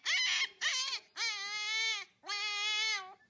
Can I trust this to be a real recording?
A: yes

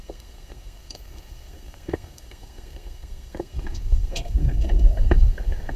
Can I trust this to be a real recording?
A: no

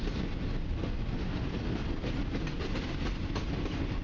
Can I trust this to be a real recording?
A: yes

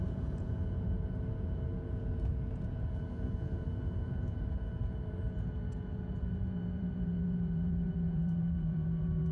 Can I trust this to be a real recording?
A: no